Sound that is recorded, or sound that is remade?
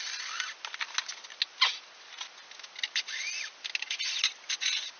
recorded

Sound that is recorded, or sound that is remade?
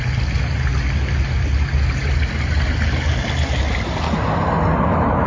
recorded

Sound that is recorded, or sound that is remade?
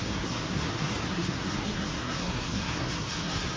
remade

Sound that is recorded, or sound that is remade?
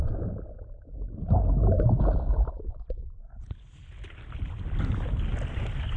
recorded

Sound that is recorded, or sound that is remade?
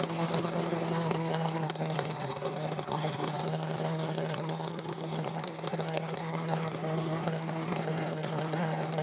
remade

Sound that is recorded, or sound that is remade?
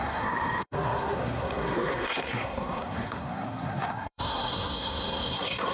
remade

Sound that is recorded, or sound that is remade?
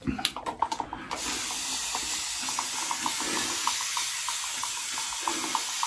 recorded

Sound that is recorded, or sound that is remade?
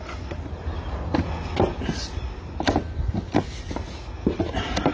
recorded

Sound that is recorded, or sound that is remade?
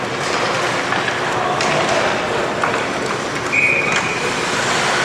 recorded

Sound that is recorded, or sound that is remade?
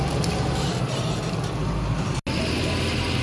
recorded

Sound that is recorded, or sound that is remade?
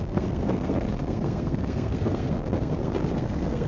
remade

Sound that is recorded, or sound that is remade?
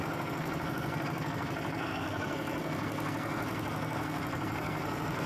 remade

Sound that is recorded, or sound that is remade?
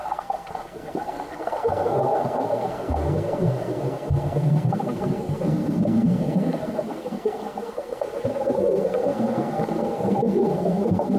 remade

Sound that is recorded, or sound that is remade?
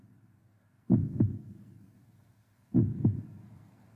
remade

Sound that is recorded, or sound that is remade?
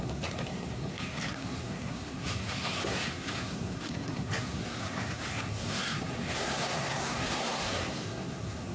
remade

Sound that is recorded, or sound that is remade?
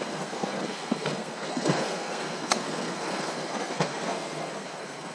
remade